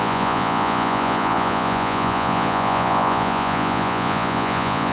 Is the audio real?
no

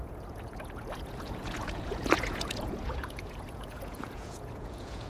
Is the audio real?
no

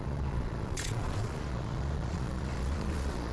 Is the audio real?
no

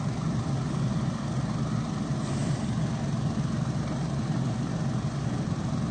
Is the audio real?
yes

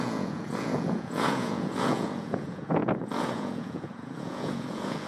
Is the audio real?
no